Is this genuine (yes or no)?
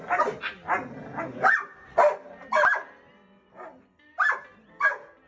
yes